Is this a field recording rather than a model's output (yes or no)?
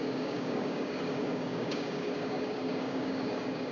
no